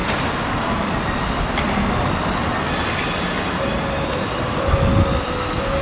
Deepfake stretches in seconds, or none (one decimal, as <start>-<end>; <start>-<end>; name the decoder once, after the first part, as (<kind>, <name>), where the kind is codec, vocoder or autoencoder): none